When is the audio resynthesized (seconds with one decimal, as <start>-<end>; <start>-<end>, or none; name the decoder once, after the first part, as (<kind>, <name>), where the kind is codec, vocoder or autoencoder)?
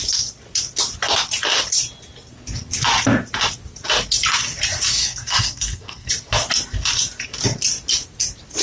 5.0-6.1 (codec, SNAC)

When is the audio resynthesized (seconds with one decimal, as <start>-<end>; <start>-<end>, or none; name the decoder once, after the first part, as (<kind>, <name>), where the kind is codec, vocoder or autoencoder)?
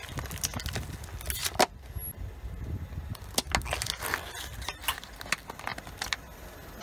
none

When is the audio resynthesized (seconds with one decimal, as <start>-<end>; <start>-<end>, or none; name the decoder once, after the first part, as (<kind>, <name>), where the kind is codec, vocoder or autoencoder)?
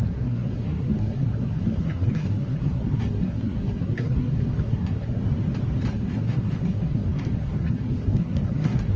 0.0-5.2 (codec, SNAC); 5.9-9.0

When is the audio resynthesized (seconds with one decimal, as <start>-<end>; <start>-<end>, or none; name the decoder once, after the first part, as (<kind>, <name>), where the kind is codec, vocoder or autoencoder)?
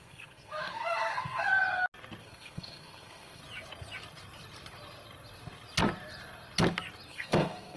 0.0-1.5 (codec, SNAC); 2.2-3.4; 7.1-7.8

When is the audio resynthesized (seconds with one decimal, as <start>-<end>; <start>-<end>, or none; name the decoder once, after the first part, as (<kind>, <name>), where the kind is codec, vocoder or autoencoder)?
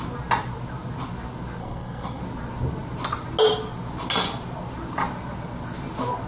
1.6-2.2 (codec, SNAC)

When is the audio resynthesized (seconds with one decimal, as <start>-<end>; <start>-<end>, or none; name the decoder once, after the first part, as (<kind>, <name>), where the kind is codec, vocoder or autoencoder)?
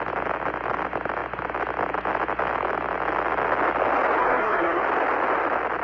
4.2-4.8 (codec, SNAC)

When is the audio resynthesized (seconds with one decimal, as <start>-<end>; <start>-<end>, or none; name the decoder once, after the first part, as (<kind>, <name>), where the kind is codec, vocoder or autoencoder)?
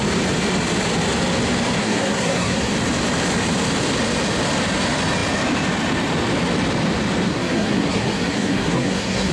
1.8-2.7 (codec, SNAC); 7.3-9.3